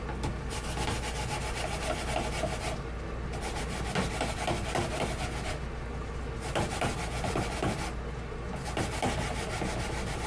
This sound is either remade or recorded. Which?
recorded